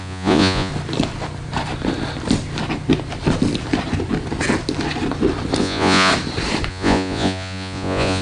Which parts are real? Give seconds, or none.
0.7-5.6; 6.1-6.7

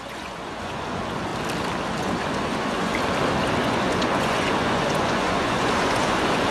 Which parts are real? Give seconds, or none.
1.3-2.0; 2.9-3.6

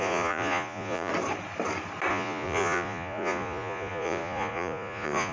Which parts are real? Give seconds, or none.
1.1-2.1

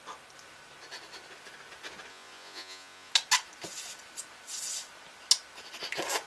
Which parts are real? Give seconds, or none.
0.0-2.1; 3.1-6.3

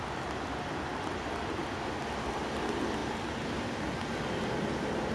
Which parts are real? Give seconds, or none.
0.0-5.1

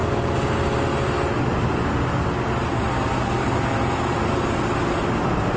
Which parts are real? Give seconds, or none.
0.0-5.6

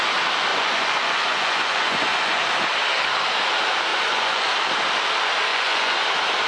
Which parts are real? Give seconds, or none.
0.0-0.5; 2.4-3.9; 4.5-5.5; 6.1-6.5